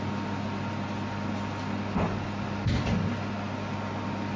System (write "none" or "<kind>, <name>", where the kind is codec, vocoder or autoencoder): none